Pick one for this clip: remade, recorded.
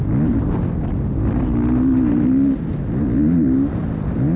recorded